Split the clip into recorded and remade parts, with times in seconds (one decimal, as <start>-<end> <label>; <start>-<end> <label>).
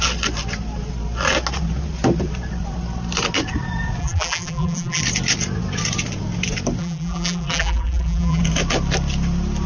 0.0-4.0 recorded; 4.0-5.0 remade; 5.0-6.8 recorded; 6.8-8.4 remade; 8.4-9.7 recorded